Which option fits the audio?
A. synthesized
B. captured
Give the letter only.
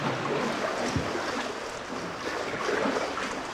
B